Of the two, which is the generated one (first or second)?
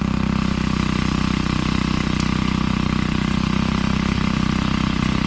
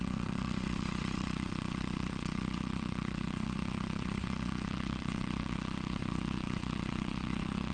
second